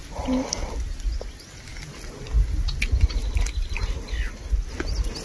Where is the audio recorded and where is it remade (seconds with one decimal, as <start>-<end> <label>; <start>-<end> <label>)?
0.0-5.2 recorded